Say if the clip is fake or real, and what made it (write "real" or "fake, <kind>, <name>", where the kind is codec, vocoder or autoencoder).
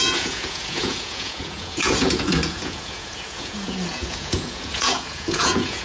fake, vocoder, Vocos